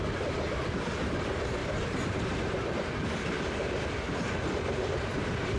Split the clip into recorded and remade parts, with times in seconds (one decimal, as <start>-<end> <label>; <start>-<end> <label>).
0.0-5.6 remade